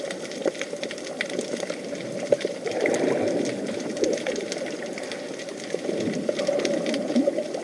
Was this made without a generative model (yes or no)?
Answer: yes